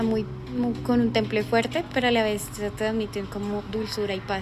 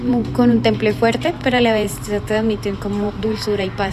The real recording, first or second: first